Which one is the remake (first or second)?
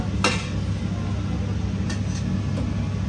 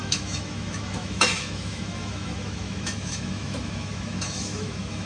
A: second